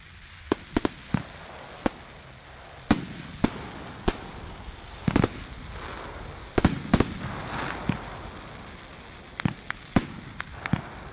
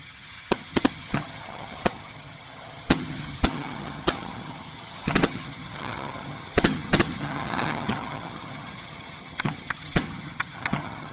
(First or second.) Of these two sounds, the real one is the first